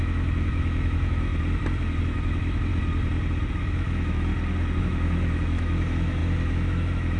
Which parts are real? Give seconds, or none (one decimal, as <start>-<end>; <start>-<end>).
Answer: 1.3-2.0; 2.7-3.5; 4.3-4.8